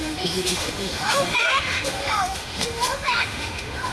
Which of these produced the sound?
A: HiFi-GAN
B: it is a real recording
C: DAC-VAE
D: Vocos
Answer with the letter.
C